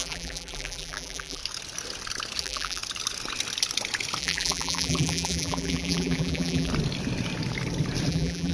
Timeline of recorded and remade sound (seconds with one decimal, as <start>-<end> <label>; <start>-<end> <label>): 0.0-1.4 remade; 1.4-2.4 recorded; 2.4-2.8 remade; 2.8-4.2 recorded; 4.2-6.7 remade; 6.7-8.1 recorded; 8.1-8.5 remade